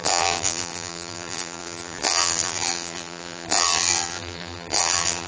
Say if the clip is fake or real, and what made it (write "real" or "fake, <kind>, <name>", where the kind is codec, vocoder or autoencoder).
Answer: fake, vocoder, BigVGAN v2